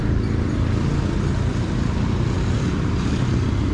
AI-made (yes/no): no